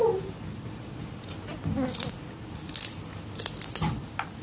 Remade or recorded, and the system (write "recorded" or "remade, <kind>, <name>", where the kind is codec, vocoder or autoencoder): recorded